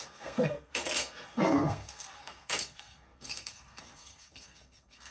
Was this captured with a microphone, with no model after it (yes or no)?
no